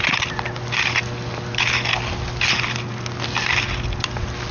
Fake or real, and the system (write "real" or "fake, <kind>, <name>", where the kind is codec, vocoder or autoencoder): real